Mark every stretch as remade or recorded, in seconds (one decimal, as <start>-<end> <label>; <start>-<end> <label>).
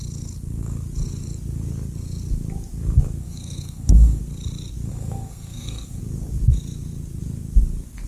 0.0-3.2 recorded; 3.2-4.2 remade; 4.2-4.9 recorded; 4.9-6.0 remade; 6.0-8.1 recorded